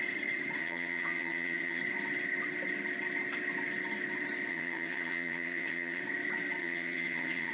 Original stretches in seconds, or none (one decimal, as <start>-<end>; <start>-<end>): 0.0-0.6; 1.8-4.5; 6.0-6.6